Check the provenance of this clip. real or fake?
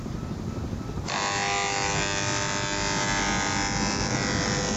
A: real